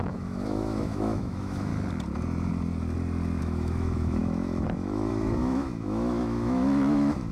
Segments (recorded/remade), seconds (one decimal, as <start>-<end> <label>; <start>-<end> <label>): 0.0-1.7 remade; 1.7-3.4 recorded; 3.4-7.3 remade